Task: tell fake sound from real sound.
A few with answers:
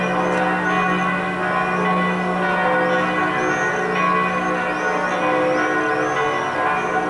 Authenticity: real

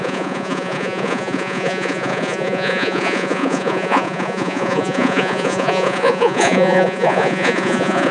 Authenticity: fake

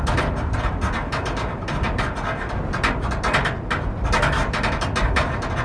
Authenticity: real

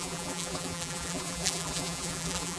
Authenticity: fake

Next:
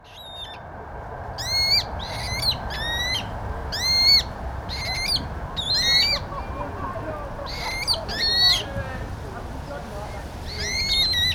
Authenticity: real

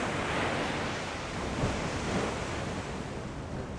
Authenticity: real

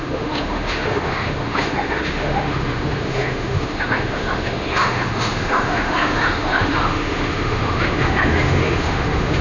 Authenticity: fake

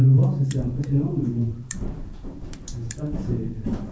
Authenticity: fake